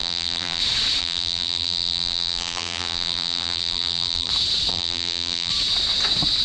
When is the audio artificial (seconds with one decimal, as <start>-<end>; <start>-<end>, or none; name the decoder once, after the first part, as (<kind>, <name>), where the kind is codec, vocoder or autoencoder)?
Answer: 0.0-0.6 (vocoder, BigVGAN v2); 1.0-4.3; 4.7-5.5